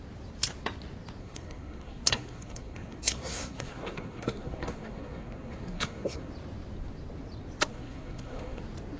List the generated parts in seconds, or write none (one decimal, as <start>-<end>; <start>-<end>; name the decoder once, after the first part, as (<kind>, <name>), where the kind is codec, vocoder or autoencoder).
1.2-6.3 (codec, SNAC); 7.7-8.6